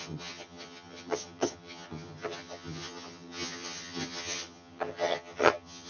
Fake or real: fake